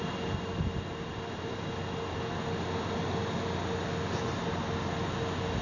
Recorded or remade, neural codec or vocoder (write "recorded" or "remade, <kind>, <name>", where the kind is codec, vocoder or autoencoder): recorded